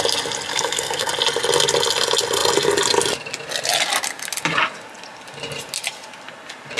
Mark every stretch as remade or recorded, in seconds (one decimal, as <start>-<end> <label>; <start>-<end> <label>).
0.0-0.5 recorded; 0.5-1.1 remade; 1.1-6.8 recorded